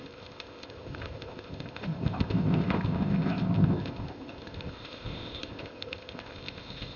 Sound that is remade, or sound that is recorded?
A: remade